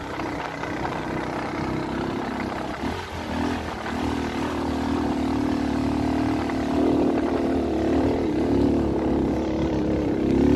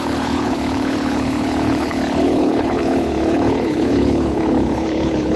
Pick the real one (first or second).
first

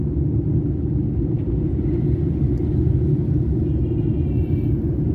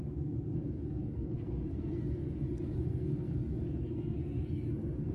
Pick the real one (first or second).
first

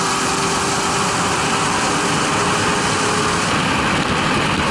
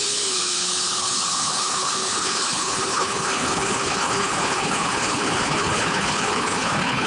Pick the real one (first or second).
first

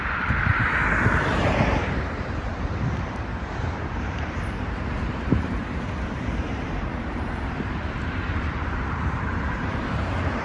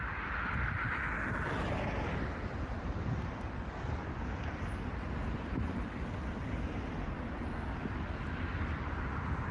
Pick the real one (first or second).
second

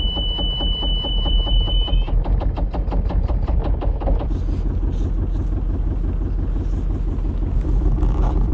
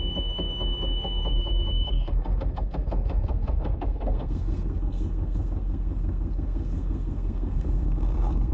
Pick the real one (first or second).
first